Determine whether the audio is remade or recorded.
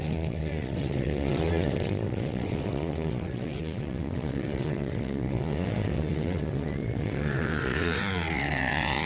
remade